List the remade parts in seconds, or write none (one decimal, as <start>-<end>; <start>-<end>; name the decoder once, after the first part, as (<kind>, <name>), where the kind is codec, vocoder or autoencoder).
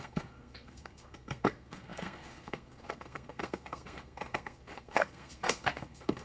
0.0-6.2 (codec, SNAC)